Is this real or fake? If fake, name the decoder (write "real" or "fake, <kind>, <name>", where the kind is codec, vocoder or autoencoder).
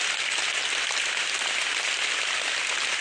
real